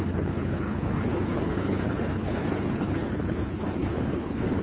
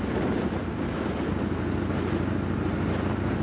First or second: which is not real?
first